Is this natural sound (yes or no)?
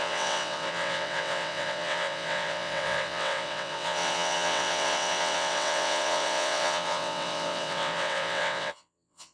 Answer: no